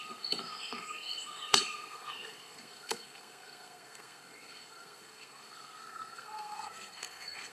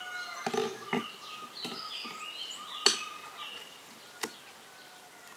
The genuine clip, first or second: second